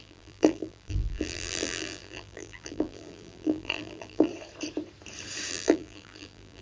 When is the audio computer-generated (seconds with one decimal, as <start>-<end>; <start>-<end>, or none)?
0.0-4.3; 5.5-6.6